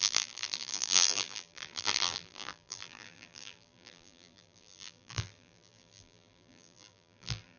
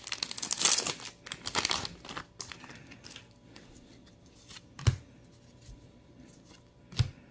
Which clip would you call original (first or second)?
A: second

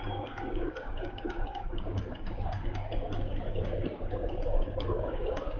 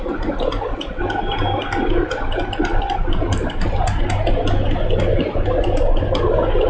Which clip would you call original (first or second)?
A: second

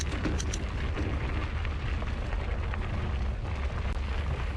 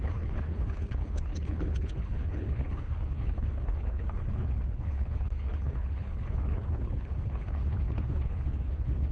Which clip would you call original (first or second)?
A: first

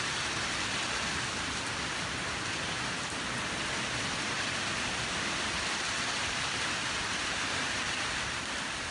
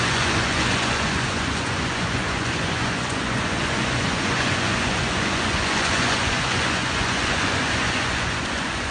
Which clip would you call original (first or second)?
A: first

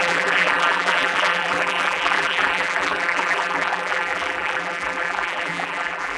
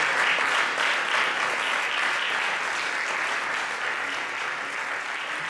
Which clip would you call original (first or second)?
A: second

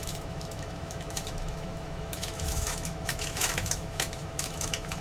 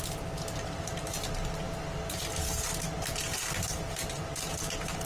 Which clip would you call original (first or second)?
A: second